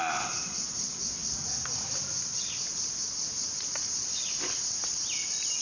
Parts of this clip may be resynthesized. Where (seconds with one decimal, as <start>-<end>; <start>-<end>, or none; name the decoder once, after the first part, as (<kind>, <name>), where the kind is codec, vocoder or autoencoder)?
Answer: none